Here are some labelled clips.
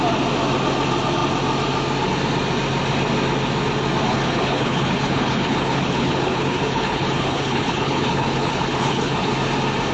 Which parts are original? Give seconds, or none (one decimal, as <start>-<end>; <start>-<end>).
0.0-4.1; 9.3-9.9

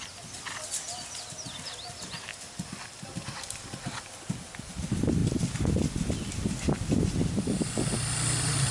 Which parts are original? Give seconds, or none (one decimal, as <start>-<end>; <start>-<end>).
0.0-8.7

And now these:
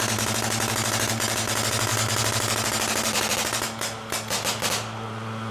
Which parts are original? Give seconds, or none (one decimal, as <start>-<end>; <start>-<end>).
0.0-5.5

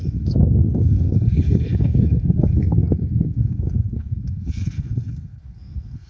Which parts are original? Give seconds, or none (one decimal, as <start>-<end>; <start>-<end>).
none